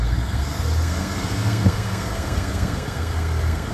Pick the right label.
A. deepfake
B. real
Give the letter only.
A